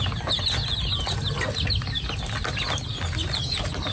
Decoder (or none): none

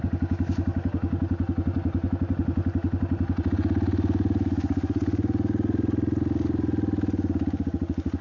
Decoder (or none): none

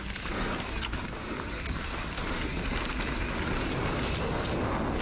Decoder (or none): none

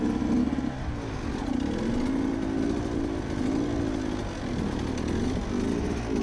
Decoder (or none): none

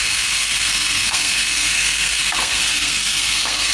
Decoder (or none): codec, SNAC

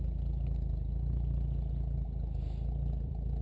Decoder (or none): none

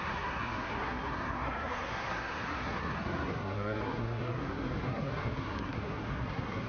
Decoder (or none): codec, SNAC